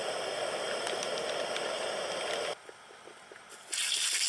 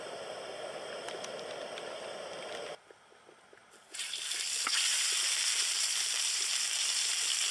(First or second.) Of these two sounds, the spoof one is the second